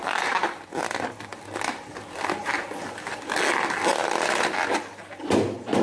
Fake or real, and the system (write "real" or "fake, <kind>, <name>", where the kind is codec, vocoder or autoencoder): real